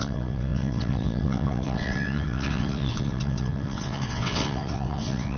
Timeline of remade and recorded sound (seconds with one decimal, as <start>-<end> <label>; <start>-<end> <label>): 0.0-5.4 remade